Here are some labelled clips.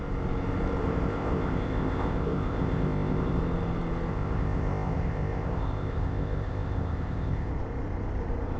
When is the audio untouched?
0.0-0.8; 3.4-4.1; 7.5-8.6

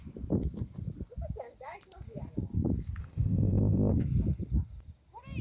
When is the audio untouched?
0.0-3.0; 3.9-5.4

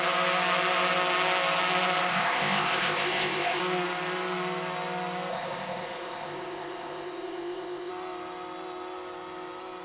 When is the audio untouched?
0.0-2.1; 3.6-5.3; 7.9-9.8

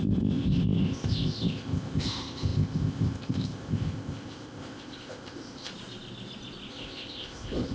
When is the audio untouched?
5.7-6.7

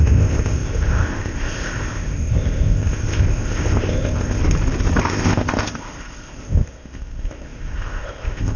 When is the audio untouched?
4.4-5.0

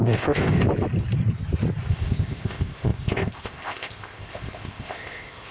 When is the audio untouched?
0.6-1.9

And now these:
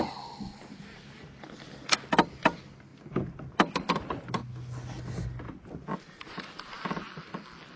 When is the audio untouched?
0.0-7.8